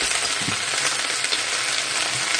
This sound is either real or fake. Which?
real